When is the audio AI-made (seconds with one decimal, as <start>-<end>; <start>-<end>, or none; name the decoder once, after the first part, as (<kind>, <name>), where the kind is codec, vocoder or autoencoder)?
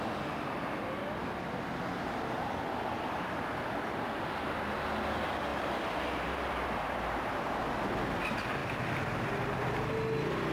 5.5-8.2 (vocoder, BigVGAN v2)